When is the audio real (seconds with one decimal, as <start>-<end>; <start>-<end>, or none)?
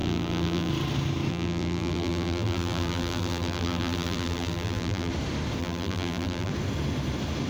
0.7-1.3; 5.1-5.6; 6.5-7.5